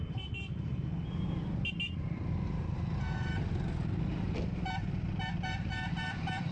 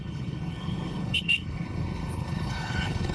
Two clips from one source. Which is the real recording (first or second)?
first